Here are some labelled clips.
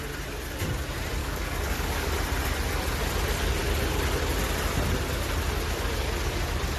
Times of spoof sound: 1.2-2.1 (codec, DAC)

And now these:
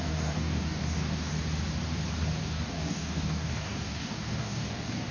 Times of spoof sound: 0.0-1.3 (codec, DAC); 2.4-5.1